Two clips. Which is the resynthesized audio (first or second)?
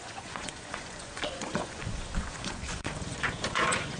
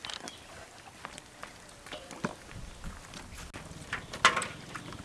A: first